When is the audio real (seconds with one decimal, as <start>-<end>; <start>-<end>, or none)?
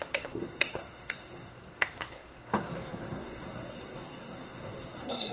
none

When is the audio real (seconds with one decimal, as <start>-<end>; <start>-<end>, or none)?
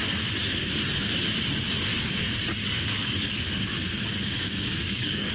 0.0-1.9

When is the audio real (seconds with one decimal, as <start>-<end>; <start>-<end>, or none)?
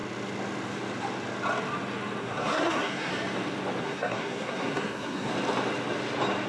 0.0-2.2; 3.1-3.8; 5.3-6.5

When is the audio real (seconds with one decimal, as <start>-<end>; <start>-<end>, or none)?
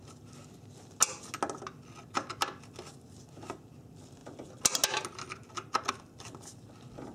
0.0-7.1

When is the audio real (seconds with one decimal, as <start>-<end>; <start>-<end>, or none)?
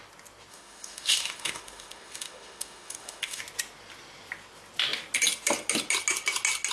0.0-0.5; 3.4-6.7